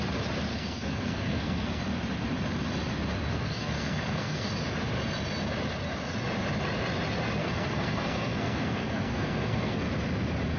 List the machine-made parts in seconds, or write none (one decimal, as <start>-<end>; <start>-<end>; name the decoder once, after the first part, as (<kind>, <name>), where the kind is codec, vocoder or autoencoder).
0.5-1.8 (codec, SNAC); 3.3-4.5; 7.4-9.9